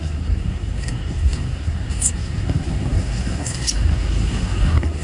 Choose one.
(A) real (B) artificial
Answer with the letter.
B